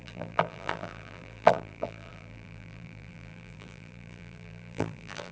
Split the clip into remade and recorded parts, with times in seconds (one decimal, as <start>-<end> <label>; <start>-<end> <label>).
0.0-5.3 remade